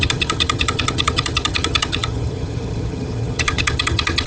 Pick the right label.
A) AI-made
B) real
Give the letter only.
A